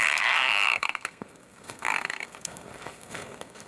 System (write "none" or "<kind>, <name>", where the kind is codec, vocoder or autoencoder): codec, SNAC